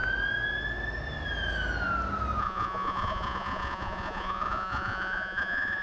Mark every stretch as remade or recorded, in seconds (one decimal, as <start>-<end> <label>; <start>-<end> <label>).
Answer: 0.0-2.4 recorded; 2.4-5.8 remade